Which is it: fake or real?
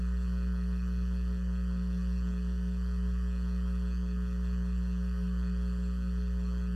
fake